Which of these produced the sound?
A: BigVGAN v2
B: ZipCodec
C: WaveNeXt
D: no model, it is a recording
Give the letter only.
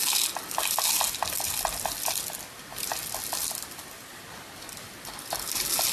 D